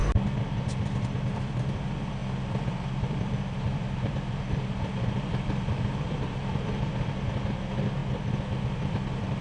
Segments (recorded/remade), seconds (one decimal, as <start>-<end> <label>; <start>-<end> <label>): 0.0-1.0 recorded; 1.0-8.0 remade; 8.0-8.6 recorded; 8.6-9.4 remade